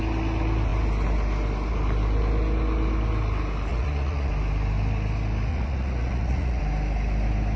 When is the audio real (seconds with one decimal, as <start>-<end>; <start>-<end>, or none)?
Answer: 0.0-3.7; 4.3-5.5; 6.6-7.6